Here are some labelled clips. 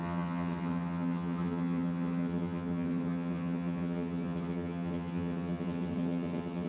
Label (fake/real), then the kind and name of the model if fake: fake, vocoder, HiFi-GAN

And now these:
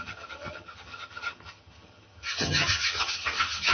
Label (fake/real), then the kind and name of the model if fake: fake, vocoder, HiFi-GAN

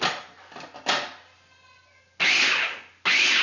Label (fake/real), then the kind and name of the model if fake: real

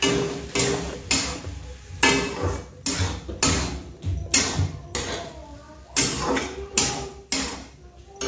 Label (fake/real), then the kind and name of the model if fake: real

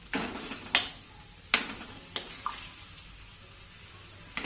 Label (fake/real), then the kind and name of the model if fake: real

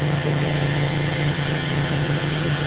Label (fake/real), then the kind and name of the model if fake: fake, vocoder, HiFi-GAN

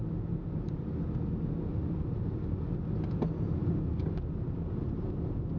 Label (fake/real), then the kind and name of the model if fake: real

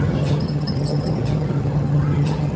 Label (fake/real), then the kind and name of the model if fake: fake, vocoder, HiFi-GAN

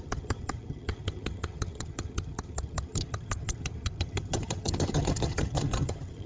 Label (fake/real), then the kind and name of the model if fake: fake, vocoder, HiFi-GAN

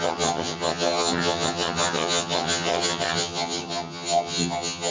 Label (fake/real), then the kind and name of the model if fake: fake, vocoder, HiFi-GAN